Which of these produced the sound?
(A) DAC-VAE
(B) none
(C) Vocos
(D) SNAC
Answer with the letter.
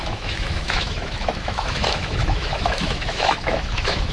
A